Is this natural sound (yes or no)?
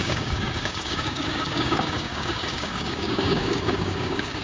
no